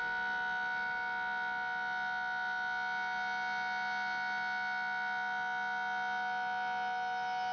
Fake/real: real